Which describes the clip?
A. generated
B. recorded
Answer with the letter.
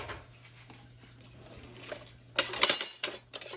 B